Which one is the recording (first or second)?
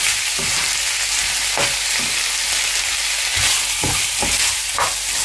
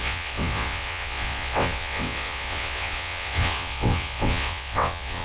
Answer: first